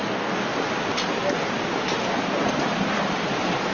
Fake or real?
real